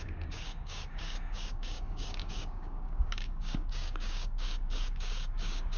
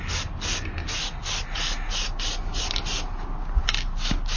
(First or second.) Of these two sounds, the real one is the second